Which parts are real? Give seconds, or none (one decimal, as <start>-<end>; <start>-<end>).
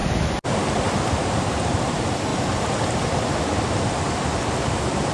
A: 1.9-2.3; 3.9-5.1